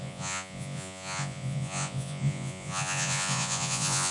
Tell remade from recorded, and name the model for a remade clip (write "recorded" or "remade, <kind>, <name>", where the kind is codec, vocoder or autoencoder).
remade, vocoder, Vocos